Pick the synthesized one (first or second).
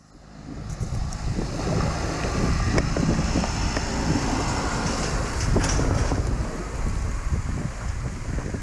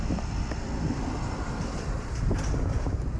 second